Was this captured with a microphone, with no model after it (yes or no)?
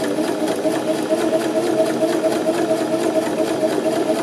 yes